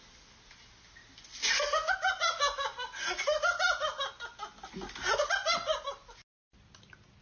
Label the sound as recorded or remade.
recorded